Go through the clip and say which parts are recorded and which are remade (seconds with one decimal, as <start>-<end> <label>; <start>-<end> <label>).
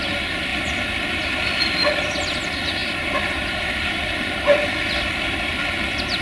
0.0-0.5 recorded; 0.5-1.6 remade; 1.6-2.8 recorded; 2.8-5.5 remade; 5.5-6.2 recorded